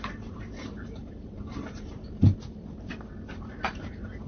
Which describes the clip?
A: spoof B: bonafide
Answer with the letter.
A